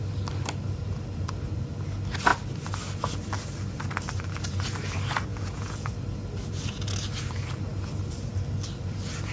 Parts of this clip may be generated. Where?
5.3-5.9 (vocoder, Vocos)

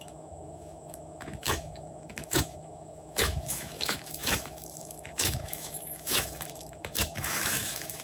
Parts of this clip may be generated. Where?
0.0-8.0 (autoencoder, DAC-VAE)

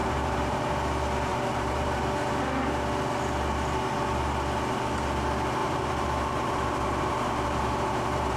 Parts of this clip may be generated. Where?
0.0-0.7 (vocoder, BigVGAN v2); 1.3-2.0; 5.6-8.4

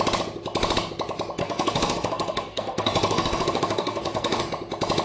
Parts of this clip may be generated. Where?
1.4-4.4 (codec, SNAC)

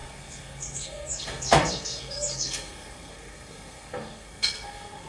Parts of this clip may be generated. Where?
0.0-5.1 (codec, SNAC)